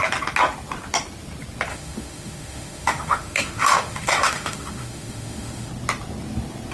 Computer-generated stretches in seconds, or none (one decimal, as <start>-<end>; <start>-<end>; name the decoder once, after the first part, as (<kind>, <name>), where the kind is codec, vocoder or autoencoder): 1.7-5.7 (autoencoder, DAC-VAE)